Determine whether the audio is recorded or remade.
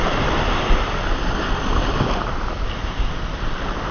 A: recorded